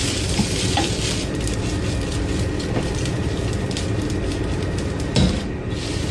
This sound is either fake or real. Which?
real